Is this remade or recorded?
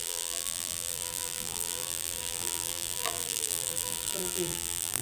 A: remade